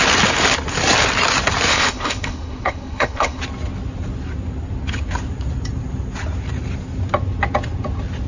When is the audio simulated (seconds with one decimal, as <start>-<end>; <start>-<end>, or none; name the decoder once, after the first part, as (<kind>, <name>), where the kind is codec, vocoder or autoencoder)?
1.7-3.4 (codec, HILCodec)